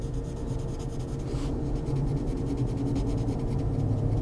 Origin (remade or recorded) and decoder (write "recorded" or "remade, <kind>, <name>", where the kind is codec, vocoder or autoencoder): recorded